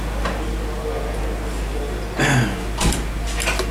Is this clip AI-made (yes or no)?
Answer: no